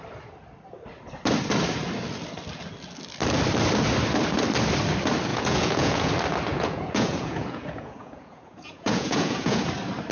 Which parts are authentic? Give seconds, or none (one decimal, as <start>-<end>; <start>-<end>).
0.0-5.3; 6.1-6.5; 9.7-10.1